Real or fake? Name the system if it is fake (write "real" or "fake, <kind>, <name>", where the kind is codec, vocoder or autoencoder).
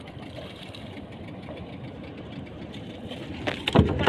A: real